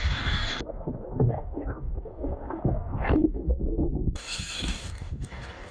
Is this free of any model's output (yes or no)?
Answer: no